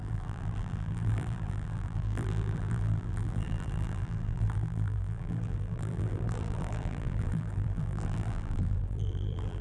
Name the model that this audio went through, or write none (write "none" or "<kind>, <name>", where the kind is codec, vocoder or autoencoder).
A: vocoder, BigVGAN v2